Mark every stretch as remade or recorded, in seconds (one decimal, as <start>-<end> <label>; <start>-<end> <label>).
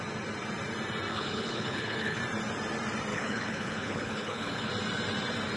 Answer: 0.0-1.1 recorded; 1.1-2.2 remade; 2.2-3.1 recorded; 3.1-4.7 remade; 4.7-5.6 recorded